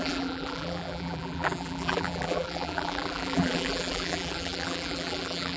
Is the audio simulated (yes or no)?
yes